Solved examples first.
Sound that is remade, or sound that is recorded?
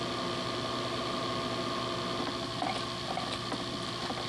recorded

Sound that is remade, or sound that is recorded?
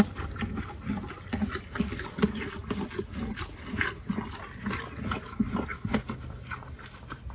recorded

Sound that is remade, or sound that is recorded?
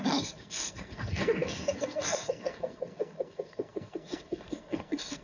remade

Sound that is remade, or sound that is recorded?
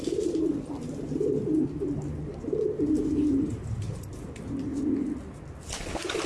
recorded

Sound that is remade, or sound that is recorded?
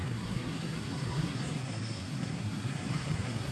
remade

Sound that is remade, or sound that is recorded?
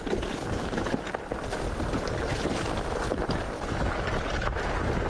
recorded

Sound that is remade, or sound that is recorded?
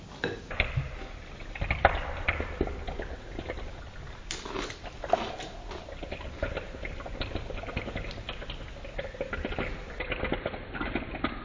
recorded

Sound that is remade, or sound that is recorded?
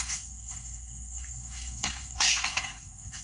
remade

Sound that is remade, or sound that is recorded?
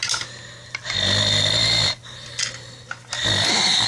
recorded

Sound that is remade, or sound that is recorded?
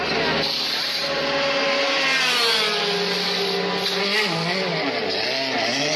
recorded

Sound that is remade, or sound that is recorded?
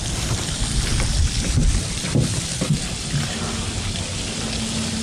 recorded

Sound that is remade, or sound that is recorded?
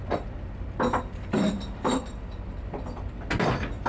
recorded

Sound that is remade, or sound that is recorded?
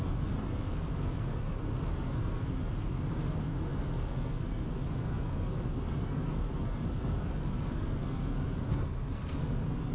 remade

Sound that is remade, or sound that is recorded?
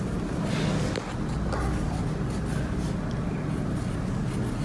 recorded